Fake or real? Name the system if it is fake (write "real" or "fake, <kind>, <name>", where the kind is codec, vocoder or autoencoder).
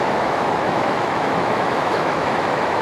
fake, autoencoder, DAC-VAE